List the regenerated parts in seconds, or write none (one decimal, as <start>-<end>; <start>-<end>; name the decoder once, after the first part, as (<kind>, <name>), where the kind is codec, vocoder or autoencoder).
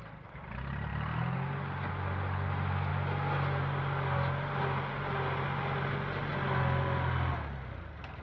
none